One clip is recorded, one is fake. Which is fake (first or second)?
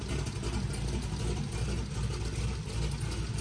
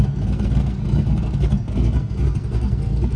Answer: second